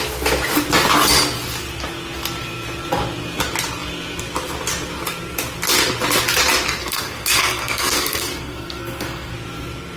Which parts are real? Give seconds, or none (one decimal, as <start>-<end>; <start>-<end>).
0.0-6.8; 9.3-10.0